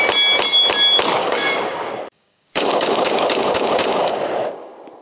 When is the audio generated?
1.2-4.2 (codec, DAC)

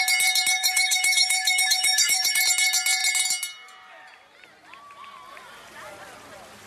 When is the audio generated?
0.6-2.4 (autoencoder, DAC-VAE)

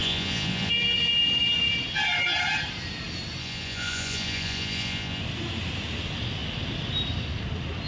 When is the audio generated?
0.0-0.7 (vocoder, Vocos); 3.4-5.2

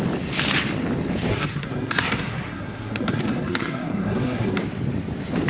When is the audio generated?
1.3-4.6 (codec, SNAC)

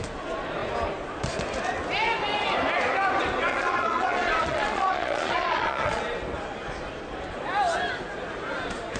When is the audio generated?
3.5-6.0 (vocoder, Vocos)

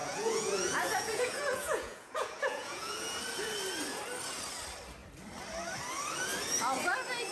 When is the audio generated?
0.0-3.2 (vocoder, Vocos)